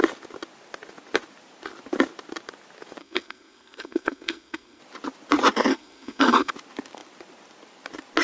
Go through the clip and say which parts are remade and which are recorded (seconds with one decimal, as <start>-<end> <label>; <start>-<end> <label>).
0.0-3.0 recorded; 3.0-4.8 remade; 4.8-5.7 recorded; 5.7-6.5 remade; 6.5-8.2 recorded